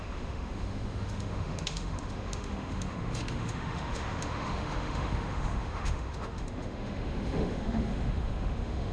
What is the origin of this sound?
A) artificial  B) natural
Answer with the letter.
A